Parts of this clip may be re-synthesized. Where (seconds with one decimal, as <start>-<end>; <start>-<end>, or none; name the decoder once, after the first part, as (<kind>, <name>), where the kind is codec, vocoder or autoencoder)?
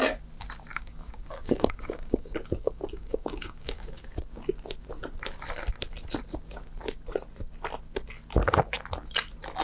0.7-4.4 (codec, DAC)